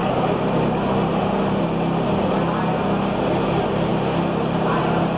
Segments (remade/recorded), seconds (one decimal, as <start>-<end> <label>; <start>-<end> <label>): 0.0-5.2 recorded